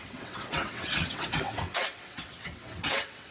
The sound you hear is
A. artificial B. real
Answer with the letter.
A